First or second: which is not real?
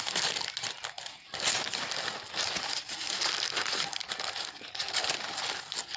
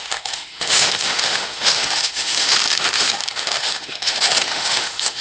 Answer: second